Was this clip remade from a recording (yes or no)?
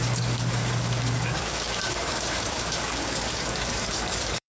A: yes